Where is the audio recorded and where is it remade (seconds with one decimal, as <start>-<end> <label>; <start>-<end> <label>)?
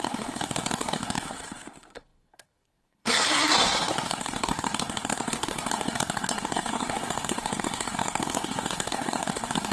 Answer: 0.0-9.7 remade